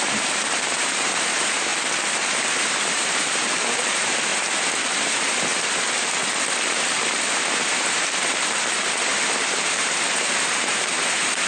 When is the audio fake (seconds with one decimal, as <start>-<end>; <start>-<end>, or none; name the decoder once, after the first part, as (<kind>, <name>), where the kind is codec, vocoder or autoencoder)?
0.0-1.7 (vocoder, BigVGAN v2); 2.4-4.3; 5.0-5.5; 6.6-11.5